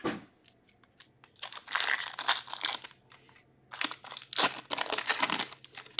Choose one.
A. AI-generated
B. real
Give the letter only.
B